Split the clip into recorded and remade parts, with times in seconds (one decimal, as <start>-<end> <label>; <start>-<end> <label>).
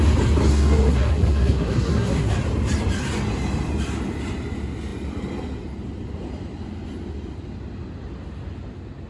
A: 0.0-0.5 recorded; 0.5-2.3 remade; 2.3-9.1 recorded